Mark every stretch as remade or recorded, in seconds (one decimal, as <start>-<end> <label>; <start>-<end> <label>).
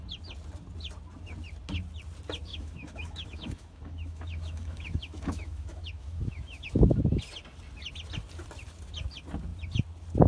0.0-2.5 recorded; 2.5-7.0 remade; 7.0-10.3 recorded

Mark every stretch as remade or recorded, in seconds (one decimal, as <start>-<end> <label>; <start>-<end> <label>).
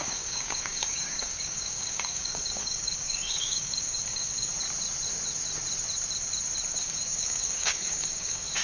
0.0-4.5 remade; 4.5-6.8 recorded; 6.8-8.6 remade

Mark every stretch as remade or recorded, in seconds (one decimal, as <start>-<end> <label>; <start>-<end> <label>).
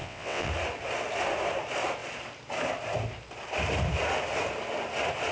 0.0-0.5 remade; 0.5-5.3 recorded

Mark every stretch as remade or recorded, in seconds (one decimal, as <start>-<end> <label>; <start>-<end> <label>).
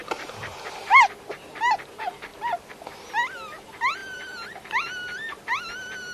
0.0-0.6 remade; 0.6-4.0 recorded; 4.0-5.4 remade; 5.4-6.1 recorded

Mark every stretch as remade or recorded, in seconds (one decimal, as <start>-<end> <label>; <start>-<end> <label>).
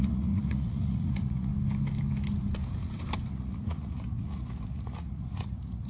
0.0-1.5 remade; 1.5-3.3 recorded; 3.3-5.9 remade